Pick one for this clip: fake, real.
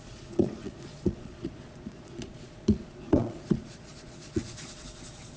fake